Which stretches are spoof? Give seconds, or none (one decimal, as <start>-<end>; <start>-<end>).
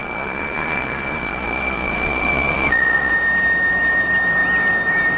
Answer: 0.0-3.1